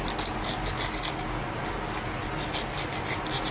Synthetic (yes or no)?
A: no